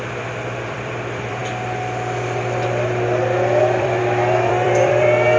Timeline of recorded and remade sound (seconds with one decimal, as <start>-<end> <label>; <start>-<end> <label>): 0.0-1.4 remade; 1.4-3.6 recorded; 3.6-5.4 remade